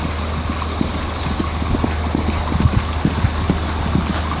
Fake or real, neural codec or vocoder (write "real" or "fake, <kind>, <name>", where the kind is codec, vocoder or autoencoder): real